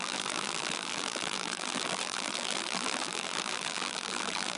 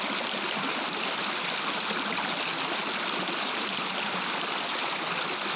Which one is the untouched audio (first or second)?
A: second